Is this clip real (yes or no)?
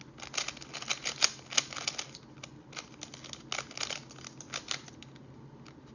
yes